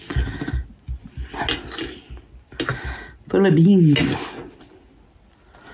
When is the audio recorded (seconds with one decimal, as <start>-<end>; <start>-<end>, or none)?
0.0-5.7